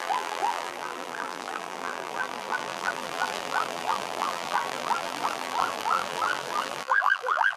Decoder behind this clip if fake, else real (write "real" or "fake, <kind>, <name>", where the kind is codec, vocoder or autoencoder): fake, vocoder, BigVGAN v2